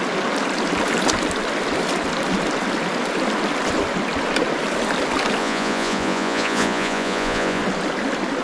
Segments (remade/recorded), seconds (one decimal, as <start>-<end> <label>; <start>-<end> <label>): 0.0-5.4 recorded; 5.4-7.6 remade; 7.6-8.4 recorded